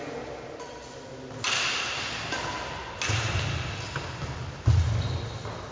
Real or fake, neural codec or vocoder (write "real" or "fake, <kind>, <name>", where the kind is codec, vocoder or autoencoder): real